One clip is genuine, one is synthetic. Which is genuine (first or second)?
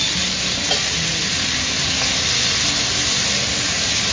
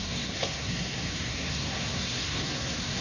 first